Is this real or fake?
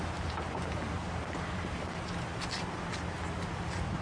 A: real